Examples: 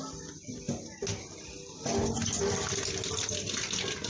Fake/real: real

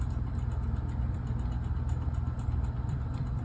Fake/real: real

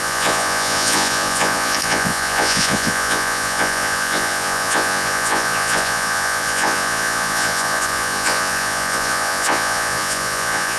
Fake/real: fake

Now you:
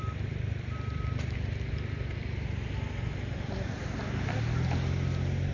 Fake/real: real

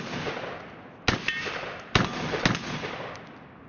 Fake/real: real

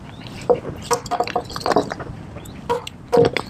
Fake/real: fake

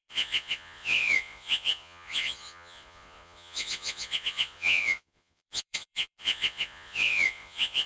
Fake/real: fake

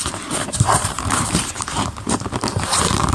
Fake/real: fake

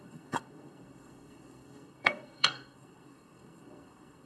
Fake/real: fake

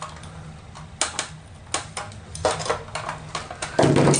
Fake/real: real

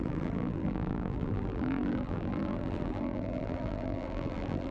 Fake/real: fake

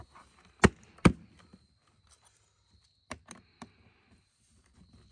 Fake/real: real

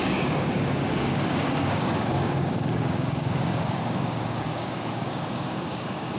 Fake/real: fake